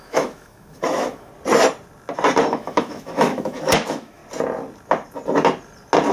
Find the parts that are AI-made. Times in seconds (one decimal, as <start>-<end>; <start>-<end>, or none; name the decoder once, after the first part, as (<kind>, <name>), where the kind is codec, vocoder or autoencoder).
0.0-1.3 (autoencoder, DAC-VAE); 2.5-4.2